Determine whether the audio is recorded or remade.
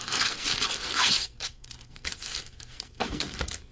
remade